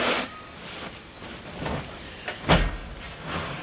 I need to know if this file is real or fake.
real